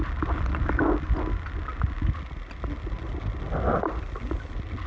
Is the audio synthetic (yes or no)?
no